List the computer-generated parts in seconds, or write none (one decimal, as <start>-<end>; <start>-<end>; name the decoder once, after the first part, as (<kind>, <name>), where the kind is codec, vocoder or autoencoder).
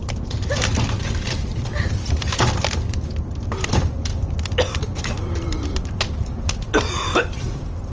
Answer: 1.0-7.9 (vocoder, BigVGAN v2)